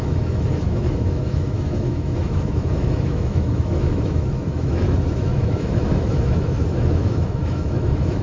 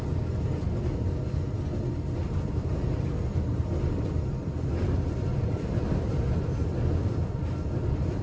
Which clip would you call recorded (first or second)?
second